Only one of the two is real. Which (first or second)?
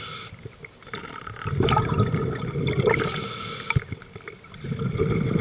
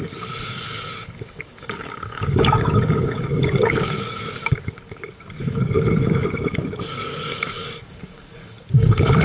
first